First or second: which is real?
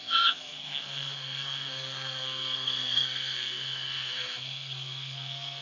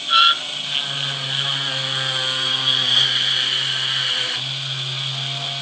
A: second